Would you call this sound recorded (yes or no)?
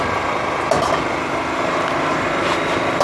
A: yes